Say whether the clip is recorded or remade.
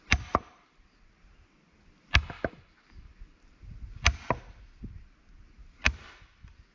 recorded